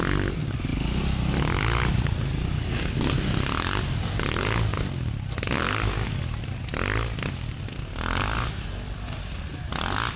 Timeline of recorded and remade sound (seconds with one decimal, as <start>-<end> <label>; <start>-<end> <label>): 0.0-10.2 recorded